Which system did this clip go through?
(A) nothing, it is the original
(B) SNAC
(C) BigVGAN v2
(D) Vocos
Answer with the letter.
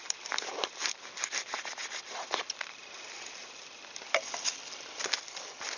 A